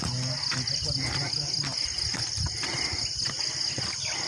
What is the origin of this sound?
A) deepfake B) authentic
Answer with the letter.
B